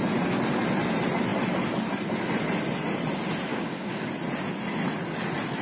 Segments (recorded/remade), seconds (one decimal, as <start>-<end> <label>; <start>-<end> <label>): 0.0-3.5 recorded; 3.5-4.1 remade; 4.1-5.6 recorded